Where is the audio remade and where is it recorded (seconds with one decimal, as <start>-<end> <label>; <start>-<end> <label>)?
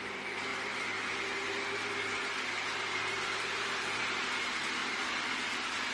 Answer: 0.0-4.8 recorded; 4.8-5.9 remade